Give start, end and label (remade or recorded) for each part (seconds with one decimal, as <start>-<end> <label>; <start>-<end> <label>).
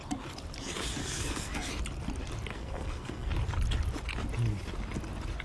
0.0-1.0 recorded; 1.0-1.7 remade; 1.7-2.5 recorded; 2.5-3.3 remade; 3.3-5.4 recorded